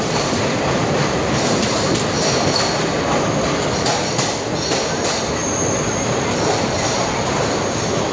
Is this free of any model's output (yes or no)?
no